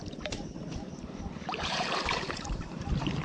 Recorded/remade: remade